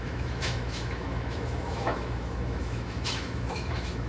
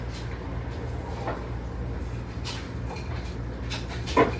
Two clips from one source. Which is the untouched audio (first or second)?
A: second